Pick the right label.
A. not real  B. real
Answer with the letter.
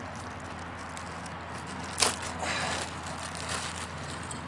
B